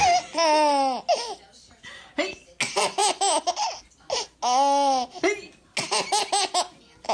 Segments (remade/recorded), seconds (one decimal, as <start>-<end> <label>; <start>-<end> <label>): 0.0-7.1 recorded